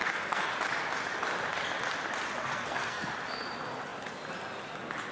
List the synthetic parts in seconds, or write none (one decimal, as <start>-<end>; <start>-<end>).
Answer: 0.0-0.5; 2.4-3.1